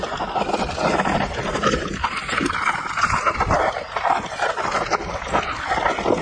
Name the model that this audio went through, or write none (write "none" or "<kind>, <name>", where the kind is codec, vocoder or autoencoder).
none